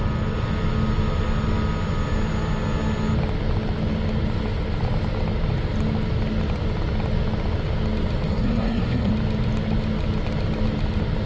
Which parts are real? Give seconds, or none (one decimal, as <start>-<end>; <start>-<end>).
0.0-8.3; 9.1-11.3